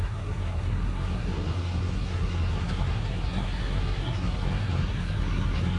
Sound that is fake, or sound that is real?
fake